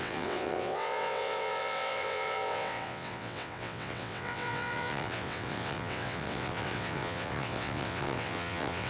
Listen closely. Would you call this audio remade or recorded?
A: remade